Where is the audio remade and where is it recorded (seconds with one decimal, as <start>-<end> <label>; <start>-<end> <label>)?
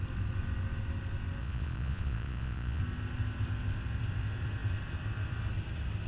0.0-1.4 recorded; 1.4-2.8 remade; 2.8-6.1 recorded